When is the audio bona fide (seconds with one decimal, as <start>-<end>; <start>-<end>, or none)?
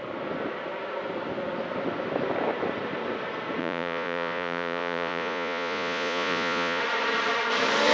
0.0-3.6; 6.8-7.9